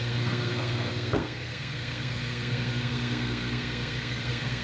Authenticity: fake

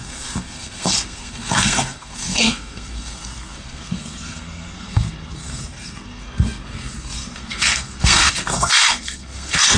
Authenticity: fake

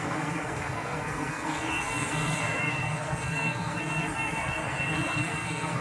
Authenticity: fake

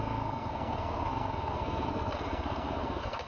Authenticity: fake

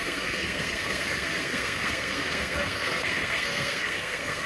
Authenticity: fake